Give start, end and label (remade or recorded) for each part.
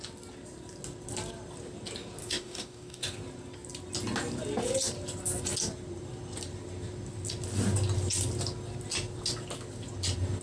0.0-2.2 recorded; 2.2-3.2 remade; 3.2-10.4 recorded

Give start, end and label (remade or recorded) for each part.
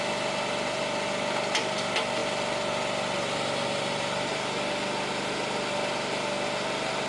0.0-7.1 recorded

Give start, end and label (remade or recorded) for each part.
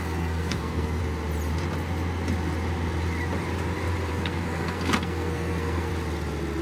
0.0-1.0 remade; 1.0-4.1 recorded; 4.1-5.9 remade; 5.9-6.6 recorded